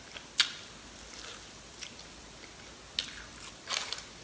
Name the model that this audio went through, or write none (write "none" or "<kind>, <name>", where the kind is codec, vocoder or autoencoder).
none